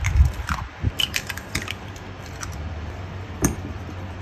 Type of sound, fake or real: fake